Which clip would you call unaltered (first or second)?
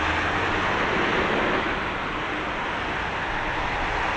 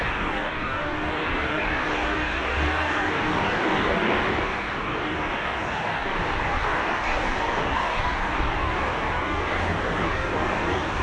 first